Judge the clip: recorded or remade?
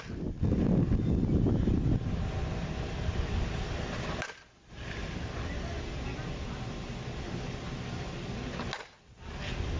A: recorded